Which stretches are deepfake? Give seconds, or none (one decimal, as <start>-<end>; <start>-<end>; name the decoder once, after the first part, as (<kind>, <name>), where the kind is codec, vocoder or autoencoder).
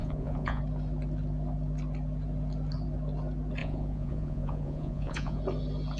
0.0-0.6 (vocoder, Vocos); 3.6-5.4